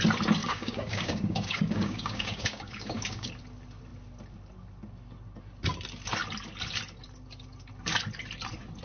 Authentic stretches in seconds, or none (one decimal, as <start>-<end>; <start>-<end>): 0.0-0.4; 3.3-8.8